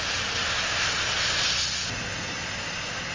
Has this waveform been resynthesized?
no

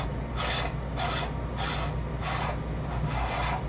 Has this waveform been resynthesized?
no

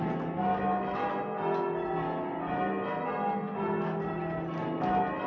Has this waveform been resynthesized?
no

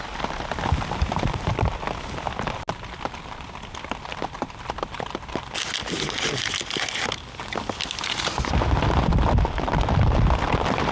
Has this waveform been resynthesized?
no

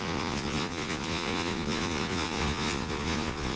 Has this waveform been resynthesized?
yes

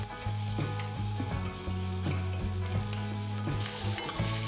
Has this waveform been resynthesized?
no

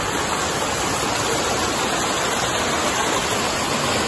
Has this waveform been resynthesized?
no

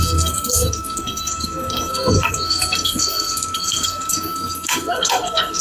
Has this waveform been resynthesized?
yes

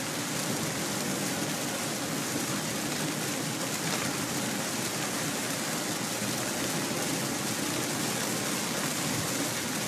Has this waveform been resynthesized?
no